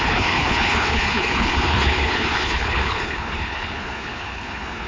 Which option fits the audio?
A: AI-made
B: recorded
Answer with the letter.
A